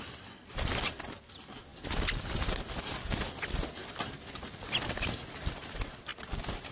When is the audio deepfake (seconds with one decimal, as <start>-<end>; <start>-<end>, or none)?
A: 3.8-5.2; 6.1-6.7